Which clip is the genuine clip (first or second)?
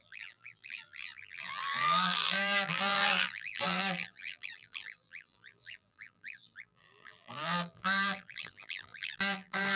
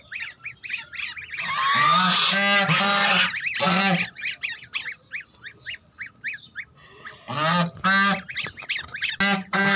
second